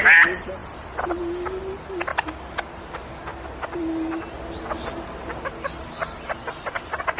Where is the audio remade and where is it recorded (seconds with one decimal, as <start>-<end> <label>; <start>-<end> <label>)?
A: 0.0-7.2 recorded